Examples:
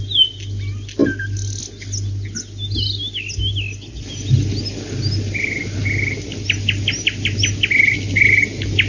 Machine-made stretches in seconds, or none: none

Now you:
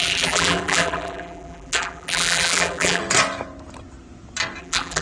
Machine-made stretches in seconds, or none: 0.0-3.0 (vocoder, BigVGAN v2); 4.6-5.0

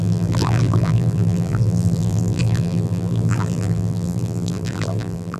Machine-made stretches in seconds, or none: 0.0-5.4 (vocoder, BigVGAN v2)

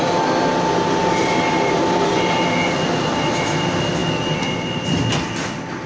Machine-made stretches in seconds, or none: 1.0-2.4 (vocoder, BigVGAN v2)